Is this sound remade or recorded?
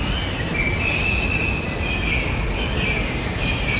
recorded